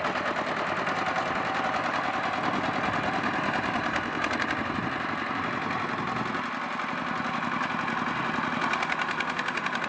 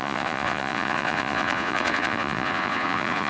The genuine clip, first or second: first